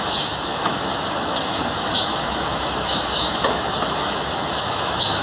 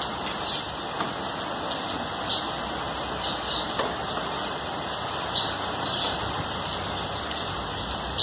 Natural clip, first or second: second